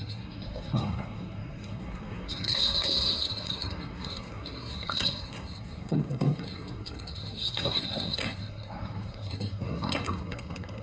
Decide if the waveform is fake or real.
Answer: fake